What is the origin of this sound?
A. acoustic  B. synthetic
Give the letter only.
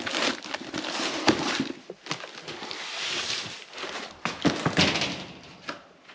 A